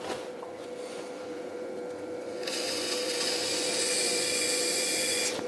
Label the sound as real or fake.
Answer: fake